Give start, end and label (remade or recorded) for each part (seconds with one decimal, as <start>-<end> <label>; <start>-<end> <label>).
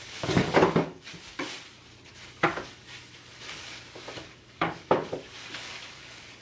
0.0-1.1 remade; 1.1-2.1 recorded; 2.1-6.4 remade